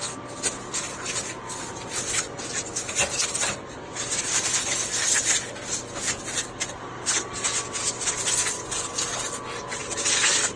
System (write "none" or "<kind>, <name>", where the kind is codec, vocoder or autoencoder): none